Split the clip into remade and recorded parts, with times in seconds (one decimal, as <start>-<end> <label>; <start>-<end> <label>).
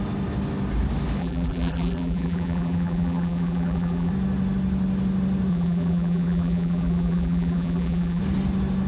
0.0-1.2 recorded; 1.2-4.1 remade; 4.1-5.5 recorded; 5.5-8.2 remade; 8.2-8.9 recorded